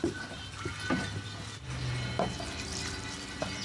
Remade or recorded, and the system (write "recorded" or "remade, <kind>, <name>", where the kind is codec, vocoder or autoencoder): recorded